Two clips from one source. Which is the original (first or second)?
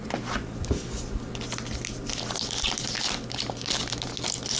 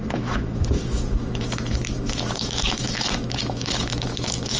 first